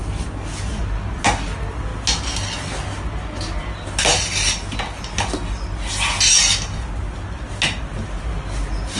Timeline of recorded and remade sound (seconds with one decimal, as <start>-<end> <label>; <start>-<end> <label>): 0.0-9.0 recorded